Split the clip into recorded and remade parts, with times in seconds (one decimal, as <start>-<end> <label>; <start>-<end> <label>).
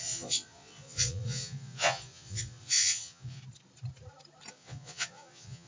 0.0-3.4 remade; 3.4-4.5 recorded; 4.5-5.7 remade